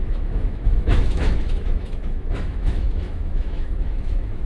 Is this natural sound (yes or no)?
no